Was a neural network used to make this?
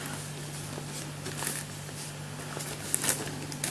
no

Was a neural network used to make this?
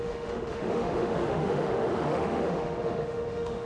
yes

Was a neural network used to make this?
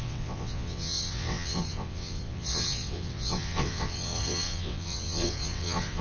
yes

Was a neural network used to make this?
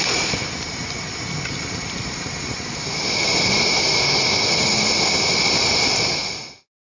no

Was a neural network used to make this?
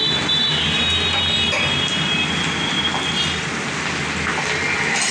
no